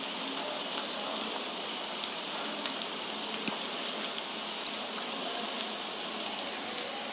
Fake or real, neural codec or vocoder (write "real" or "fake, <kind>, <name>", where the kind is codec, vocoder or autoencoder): real